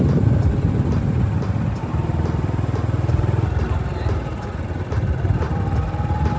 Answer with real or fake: real